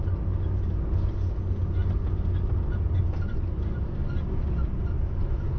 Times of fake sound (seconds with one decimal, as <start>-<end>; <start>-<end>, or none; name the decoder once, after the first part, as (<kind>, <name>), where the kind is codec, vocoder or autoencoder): none